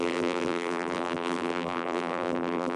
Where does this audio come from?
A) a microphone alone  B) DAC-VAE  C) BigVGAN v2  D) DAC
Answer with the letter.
C